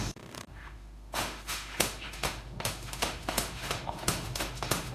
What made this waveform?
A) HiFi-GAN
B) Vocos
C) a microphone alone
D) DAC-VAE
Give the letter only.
D